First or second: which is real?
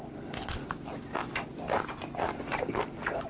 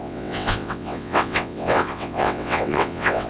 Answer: first